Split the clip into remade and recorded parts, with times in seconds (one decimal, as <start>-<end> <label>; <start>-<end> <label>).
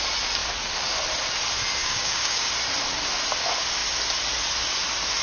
0.0-1.8 recorded; 1.8-2.5 remade; 2.5-5.2 recorded